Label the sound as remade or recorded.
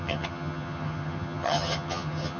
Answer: remade